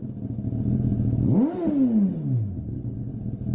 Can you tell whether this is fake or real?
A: real